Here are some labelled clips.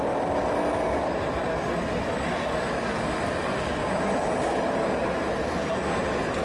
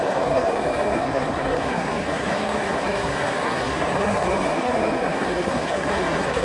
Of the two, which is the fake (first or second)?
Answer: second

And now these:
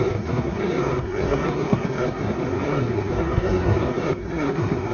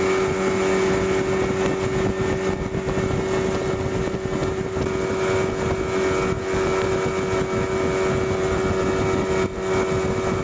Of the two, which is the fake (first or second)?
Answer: first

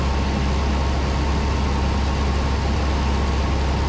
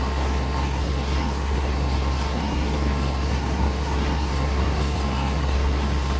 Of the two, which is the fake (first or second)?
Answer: second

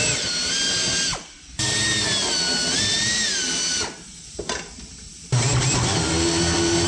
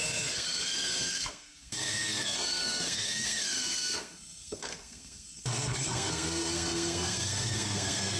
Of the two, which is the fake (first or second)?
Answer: second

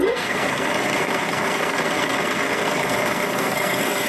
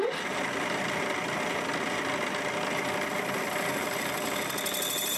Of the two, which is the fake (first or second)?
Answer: first